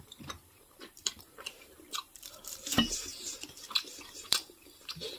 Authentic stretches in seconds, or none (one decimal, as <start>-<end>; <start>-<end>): none

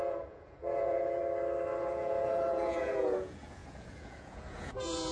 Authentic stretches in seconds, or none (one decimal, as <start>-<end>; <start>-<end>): 1.2-1.8

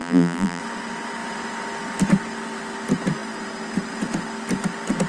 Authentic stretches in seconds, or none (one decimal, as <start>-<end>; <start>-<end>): 0.6-5.1

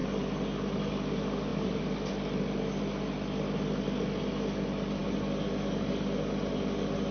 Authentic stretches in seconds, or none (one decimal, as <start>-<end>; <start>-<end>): 0.0-7.1